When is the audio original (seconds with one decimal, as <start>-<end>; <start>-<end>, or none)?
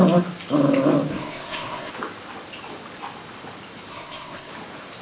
0.0-1.1; 1.9-3.9; 4.5-5.0